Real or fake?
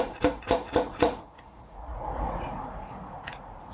fake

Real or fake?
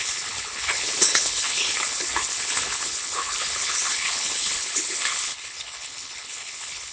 fake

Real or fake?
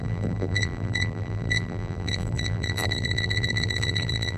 fake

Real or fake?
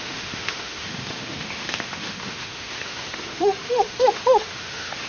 fake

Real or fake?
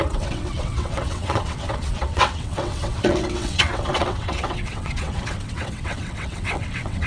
fake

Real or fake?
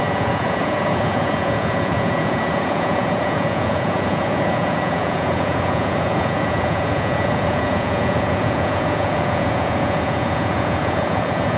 fake